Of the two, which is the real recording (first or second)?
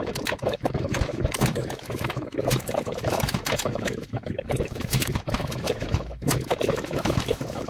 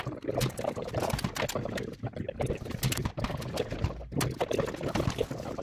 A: second